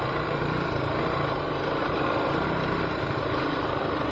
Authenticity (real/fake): fake